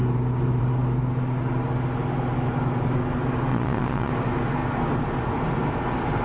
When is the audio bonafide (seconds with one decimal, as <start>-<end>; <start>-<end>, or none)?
0.0-3.5; 4.1-6.2